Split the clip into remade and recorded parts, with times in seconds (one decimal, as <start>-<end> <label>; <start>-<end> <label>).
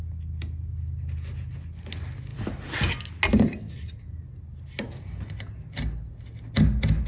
0.0-2.3 recorded; 2.3-2.9 remade; 2.9-7.1 recorded